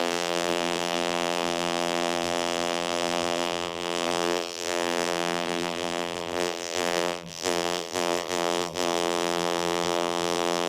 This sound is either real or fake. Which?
fake